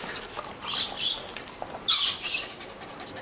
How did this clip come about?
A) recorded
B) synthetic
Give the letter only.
A